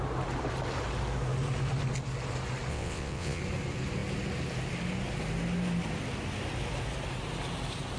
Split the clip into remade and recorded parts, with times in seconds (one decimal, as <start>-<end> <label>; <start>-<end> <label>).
0.0-2.7 recorded; 2.7-3.4 remade; 3.4-8.0 recorded